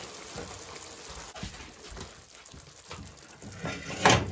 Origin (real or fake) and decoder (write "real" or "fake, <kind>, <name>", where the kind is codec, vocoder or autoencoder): real